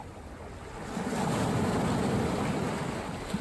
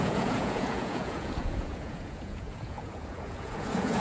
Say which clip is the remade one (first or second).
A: second